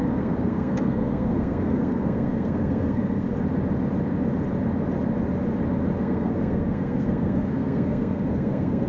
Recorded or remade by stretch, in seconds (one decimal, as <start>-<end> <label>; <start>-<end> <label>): 0.0-3.3 remade; 3.3-6.0 recorded; 6.0-8.9 remade